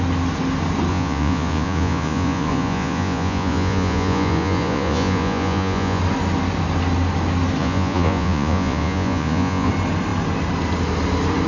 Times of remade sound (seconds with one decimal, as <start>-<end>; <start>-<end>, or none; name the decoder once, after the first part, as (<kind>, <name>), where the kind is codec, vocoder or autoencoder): 0.9-6.0 (vocoder, Vocos); 7.6-9.7